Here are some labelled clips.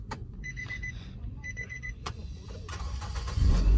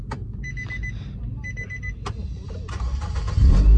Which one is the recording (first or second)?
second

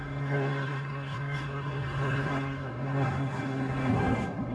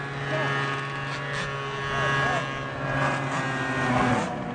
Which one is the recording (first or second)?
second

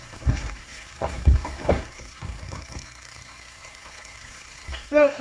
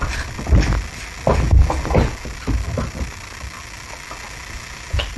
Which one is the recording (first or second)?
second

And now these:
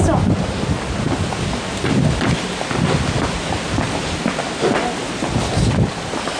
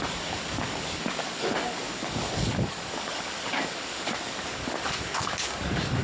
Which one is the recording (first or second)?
first